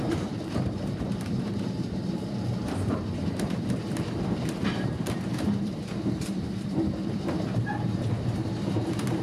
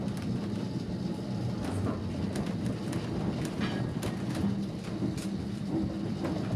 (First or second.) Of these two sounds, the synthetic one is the first